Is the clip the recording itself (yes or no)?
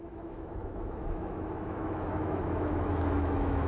no